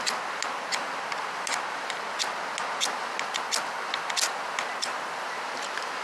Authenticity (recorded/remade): recorded